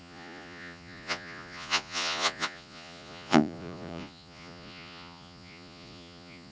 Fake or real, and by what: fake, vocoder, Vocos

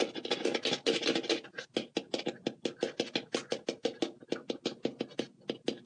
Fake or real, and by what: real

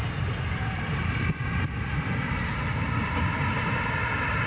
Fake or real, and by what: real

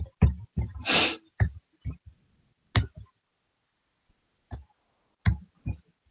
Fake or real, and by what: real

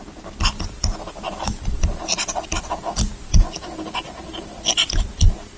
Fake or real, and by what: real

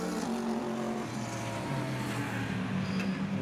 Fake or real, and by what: real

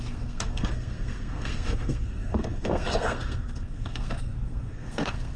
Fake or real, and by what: fake, codec, SNAC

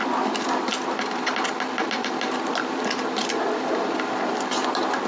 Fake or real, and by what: real